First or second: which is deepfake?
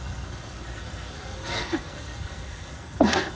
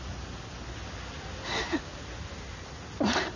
first